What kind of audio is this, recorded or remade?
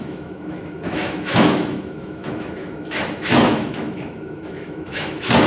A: remade